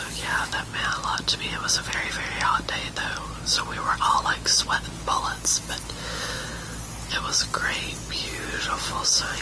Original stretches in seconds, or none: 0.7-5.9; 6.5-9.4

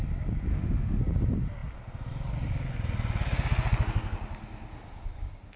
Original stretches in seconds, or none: 0.0-0.5; 1.0-5.6

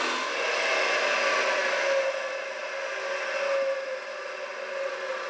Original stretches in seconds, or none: 0.0-5.3

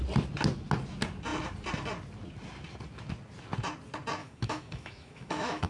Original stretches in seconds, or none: 0.0-4.2

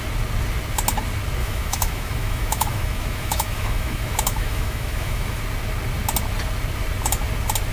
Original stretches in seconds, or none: 0.0-1.4; 5.4-7.7

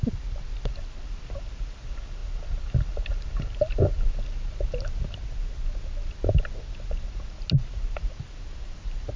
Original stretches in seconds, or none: 0.0-9.2

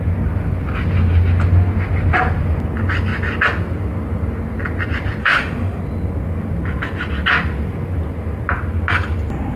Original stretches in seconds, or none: 0.0-5.2; 5.8-9.6

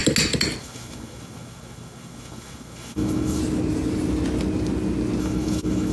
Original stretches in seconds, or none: 0.0-0.6; 3.4-5.2